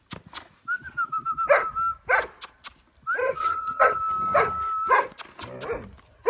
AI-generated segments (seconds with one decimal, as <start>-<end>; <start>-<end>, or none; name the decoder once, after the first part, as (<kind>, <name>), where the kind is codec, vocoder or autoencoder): 3.2-4.0 (vocoder, HiFi-GAN)